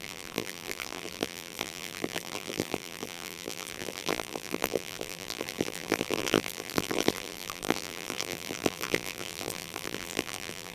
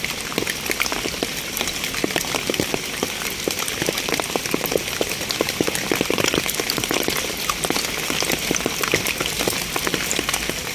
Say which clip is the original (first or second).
second